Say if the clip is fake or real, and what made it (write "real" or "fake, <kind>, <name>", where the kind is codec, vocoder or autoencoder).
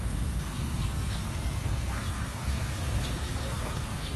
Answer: fake, codec, SNAC